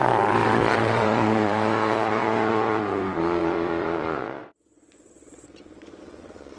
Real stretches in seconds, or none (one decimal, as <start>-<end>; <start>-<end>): none